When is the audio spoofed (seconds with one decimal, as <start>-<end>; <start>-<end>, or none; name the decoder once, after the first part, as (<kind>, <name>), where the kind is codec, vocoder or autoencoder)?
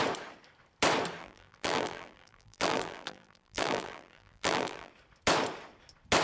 1.2-4.9 (vocoder, BigVGAN v2)